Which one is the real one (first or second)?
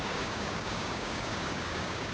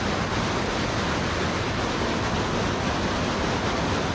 second